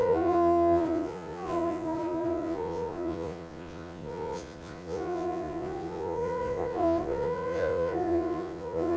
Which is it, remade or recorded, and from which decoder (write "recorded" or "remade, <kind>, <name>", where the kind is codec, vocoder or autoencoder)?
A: remade, vocoder, Vocos